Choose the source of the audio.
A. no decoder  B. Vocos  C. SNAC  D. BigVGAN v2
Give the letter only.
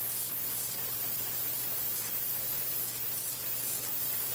D